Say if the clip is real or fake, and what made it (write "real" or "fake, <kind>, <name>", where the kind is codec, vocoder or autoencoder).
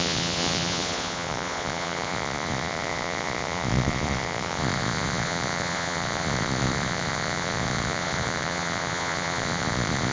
fake, vocoder, Vocos